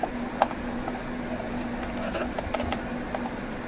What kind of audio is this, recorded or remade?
recorded